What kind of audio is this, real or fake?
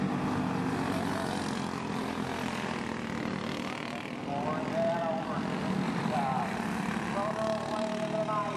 real